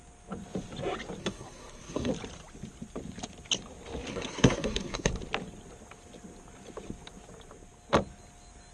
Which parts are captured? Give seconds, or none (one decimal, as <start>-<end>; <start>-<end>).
0.0-1.2; 2.1-4.1; 5.1-8.7